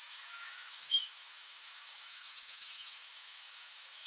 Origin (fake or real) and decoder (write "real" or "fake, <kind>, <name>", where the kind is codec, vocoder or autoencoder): fake, autoencoder, DAC-VAE